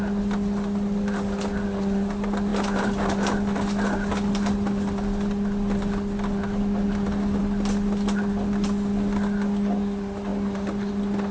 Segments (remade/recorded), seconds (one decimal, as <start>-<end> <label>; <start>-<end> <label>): 0.0-11.3 recorded